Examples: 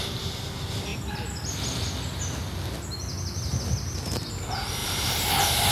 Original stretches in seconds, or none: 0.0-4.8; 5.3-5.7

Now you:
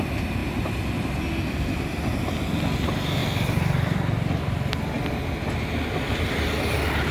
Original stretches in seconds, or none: 0.0-3.2; 5.2-7.1

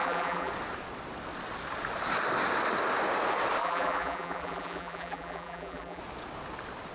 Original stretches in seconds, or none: 0.5-3.6; 6.0-6.9

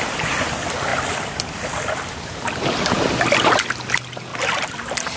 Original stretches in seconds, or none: 0.0-5.2

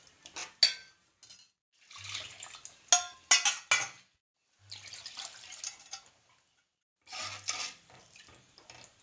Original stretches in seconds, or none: 0.0-6.7; 8.4-9.0

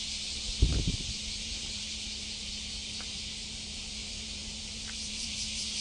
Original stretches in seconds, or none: 0.0-0.7; 1.8-4.0

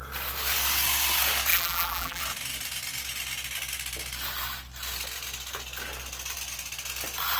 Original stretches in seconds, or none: 0.0-1.5; 2.2-7.4

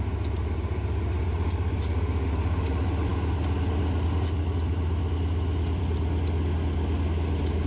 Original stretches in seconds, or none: 0.0-7.7